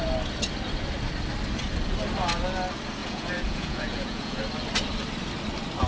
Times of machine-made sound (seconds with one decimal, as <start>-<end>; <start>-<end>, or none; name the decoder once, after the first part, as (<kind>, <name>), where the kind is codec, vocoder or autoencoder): 3.0-4.4 (vocoder, Vocos)